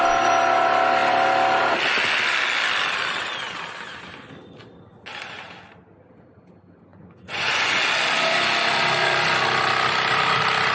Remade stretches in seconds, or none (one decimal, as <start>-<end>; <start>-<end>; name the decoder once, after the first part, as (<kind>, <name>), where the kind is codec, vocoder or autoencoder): 6.9-7.8 (vocoder, Vocos)